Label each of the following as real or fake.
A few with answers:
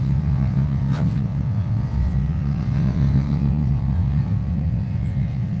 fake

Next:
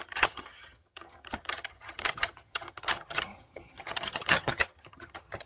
fake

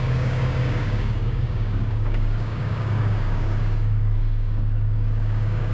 fake